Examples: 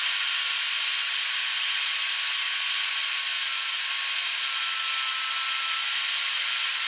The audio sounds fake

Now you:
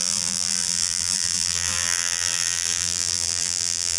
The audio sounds fake